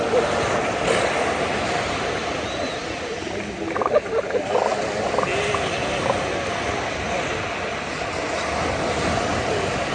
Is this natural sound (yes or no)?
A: yes